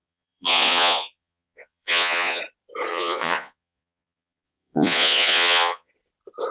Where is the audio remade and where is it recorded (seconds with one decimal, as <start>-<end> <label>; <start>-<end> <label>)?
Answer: 0.0-2.4 remade; 2.4-2.9 recorded; 2.9-5.9 remade; 5.9-6.5 recorded